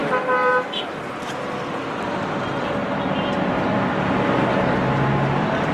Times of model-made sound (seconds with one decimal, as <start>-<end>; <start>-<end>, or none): none